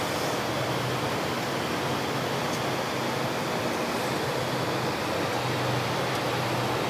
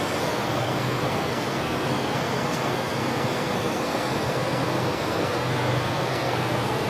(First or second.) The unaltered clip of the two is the first